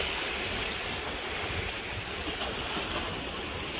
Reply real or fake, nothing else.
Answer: real